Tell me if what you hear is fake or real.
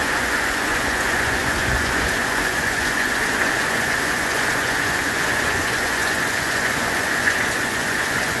fake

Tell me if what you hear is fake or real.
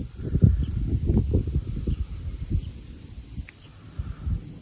real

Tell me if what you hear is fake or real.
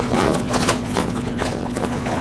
fake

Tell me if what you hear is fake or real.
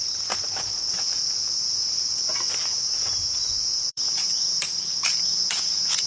fake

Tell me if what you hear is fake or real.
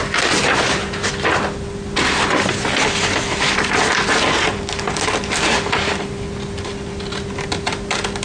real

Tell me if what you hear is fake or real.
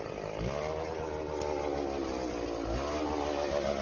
real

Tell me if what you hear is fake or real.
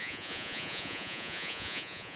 fake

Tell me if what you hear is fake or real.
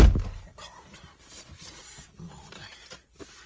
real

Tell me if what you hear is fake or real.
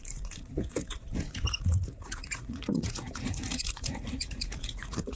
fake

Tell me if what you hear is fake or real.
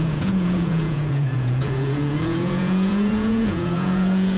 fake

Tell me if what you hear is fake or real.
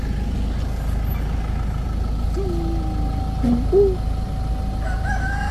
real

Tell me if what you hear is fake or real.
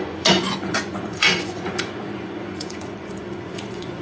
fake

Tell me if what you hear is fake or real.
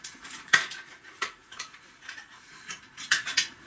fake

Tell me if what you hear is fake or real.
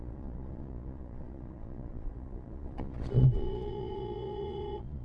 fake